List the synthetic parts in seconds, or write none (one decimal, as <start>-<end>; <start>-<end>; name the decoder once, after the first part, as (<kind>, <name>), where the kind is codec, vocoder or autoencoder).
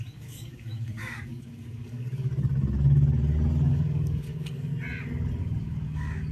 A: 0.0-2.3 (codec, DAC); 3.7-4.7; 5.4-6.3